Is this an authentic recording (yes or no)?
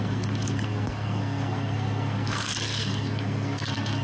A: no